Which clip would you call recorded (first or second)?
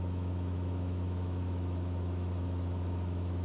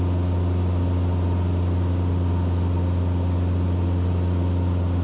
second